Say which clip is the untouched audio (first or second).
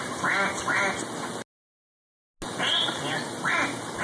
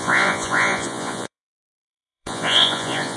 first